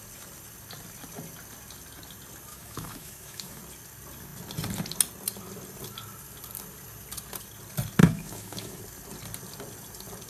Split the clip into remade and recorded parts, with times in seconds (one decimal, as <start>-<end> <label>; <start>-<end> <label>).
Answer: 0.0-2.5 recorded; 2.5-3.6 remade; 3.6-8.0 recorded; 8.0-8.8 remade; 8.8-10.3 recorded